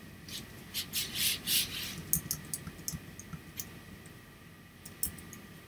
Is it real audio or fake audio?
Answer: real